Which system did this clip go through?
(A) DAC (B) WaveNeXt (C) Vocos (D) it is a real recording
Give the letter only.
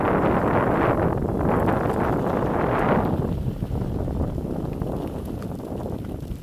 D